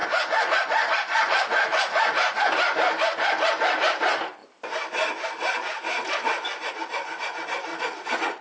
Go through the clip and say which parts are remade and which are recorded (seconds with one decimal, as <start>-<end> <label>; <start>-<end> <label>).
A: 0.0-2.4 remade; 2.4-7.7 recorded; 7.7-8.4 remade